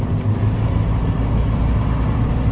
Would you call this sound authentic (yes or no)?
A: yes